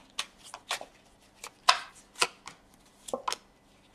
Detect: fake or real real